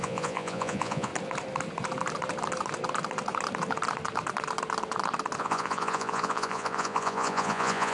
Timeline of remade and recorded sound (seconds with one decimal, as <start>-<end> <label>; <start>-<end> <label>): 0.0-1.1 remade; 1.1-5.4 recorded; 5.4-7.9 remade